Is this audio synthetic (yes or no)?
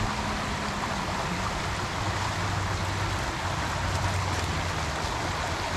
no